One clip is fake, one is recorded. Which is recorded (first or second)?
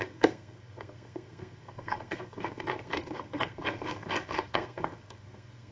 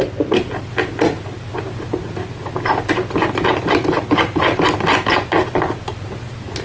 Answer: second